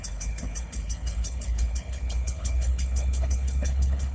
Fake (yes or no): yes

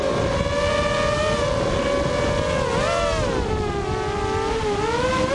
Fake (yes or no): no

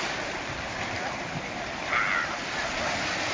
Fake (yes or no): no